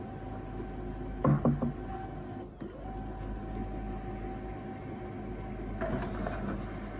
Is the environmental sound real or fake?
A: real